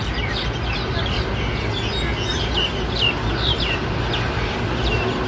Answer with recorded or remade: recorded